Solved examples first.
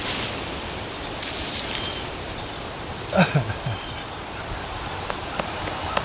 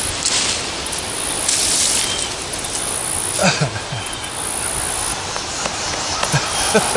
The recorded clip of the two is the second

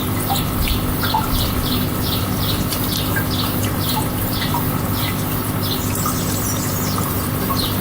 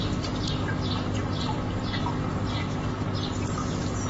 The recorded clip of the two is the second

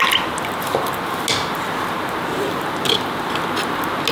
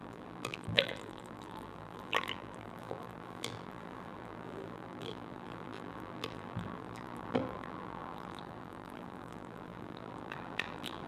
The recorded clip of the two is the first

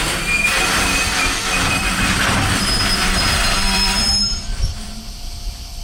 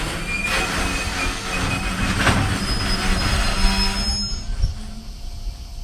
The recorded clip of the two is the second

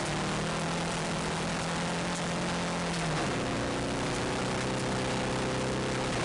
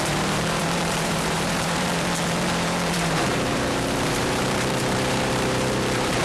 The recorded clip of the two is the first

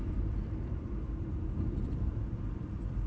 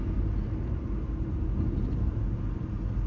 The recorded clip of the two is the second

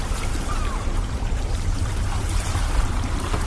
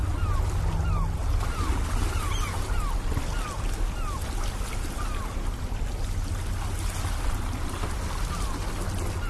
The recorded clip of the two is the second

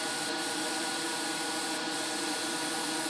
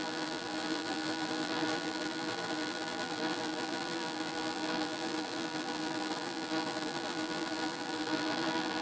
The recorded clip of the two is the first